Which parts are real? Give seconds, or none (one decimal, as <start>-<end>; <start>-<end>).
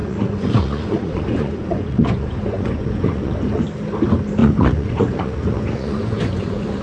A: 3.6-4.4